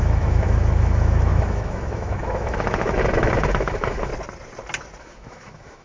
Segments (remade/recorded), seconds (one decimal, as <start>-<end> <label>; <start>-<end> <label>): 0.0-4.1 remade; 4.1-5.0 recorded; 5.0-5.8 remade